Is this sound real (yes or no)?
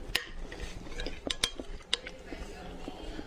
yes